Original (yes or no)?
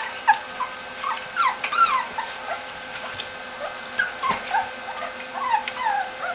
yes